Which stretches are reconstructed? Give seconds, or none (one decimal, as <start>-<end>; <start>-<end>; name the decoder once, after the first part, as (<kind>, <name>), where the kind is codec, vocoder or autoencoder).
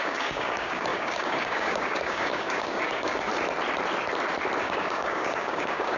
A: 0.0-3.3 (codec, DAC); 4.6-6.0